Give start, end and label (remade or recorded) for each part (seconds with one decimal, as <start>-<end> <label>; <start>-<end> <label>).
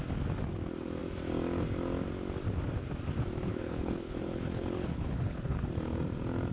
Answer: 0.0-3.5 recorded; 3.5-5.6 remade; 5.6-6.5 recorded